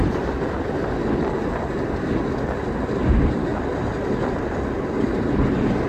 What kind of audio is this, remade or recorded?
recorded